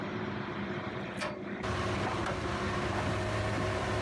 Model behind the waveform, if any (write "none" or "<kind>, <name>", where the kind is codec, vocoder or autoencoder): vocoder, BigVGAN v2